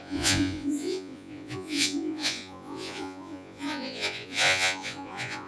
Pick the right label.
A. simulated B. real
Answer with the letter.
A